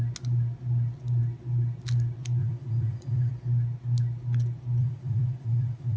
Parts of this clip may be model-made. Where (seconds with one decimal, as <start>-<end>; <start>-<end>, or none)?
2.4-3.3; 4.8-6.0